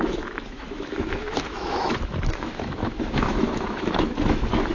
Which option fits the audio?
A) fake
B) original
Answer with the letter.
A